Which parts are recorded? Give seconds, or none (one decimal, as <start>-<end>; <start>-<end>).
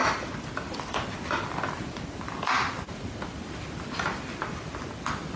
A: 0.0-5.4